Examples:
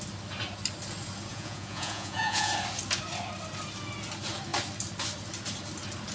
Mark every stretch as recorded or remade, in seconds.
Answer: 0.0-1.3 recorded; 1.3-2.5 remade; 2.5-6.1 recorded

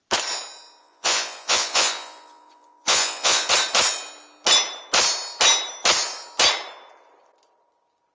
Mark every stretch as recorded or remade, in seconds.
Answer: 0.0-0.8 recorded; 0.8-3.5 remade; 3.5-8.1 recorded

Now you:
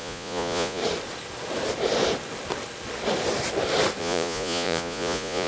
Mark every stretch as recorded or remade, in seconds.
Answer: 0.0-0.8 remade; 0.8-4.0 recorded; 4.0-5.5 remade

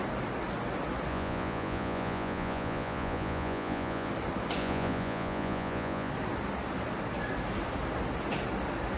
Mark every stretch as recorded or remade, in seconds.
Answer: 0.0-1.1 recorded; 1.1-4.1 remade; 4.1-4.6 recorded; 4.6-6.1 remade; 6.1-9.0 recorded

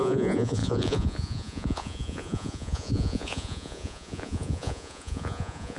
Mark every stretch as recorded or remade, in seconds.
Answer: 0.0-5.8 remade